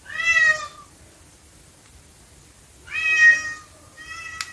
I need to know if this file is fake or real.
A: real